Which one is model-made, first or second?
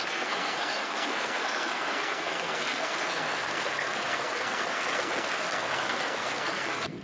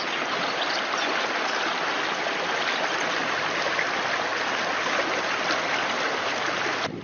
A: first